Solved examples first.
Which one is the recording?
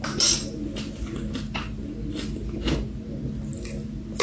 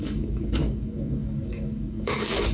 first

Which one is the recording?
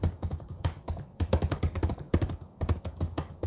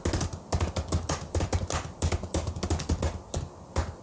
second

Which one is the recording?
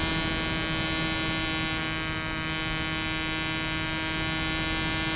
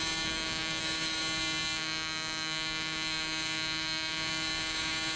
first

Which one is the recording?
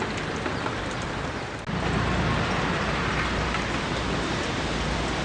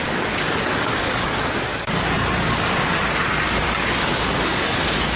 first